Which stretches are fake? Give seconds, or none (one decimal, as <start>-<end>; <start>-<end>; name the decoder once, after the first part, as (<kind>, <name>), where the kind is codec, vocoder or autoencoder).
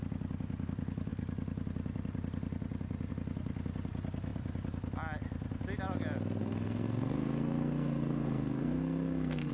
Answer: 6.4-9.5 (codec, SNAC)